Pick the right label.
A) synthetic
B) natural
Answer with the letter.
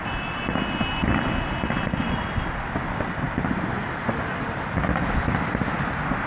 B